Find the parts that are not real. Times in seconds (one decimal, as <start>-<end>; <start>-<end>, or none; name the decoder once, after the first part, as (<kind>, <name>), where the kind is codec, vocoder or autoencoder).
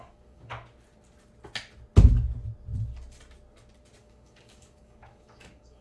0.0-0.5 (codec, DAC); 4.0-5.8